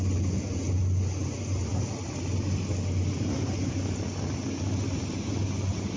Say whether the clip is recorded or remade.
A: recorded